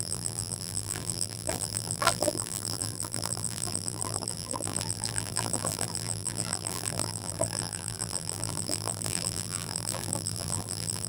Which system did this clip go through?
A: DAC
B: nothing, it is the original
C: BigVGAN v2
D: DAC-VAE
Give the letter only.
C